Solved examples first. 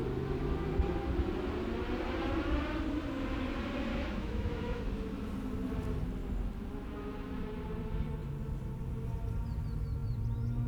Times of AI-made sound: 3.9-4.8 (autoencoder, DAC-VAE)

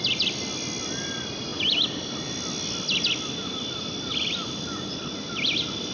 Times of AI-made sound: none